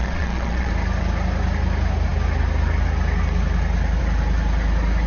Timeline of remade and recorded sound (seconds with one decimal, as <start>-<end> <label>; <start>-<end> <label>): 0.0-0.7 remade; 0.7-5.1 recorded